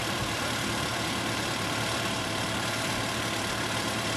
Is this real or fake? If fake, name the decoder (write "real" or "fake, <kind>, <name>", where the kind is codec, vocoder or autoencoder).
fake, vocoder, BigVGAN v2